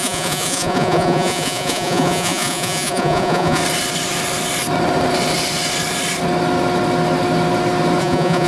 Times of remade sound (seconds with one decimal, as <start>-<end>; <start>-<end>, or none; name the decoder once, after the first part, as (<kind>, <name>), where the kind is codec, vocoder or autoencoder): 0.0-3.6 (vocoder, Vocos); 8.0-8.5